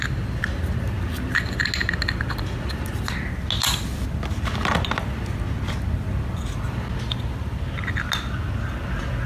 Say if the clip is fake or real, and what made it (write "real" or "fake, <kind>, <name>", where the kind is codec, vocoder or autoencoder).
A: real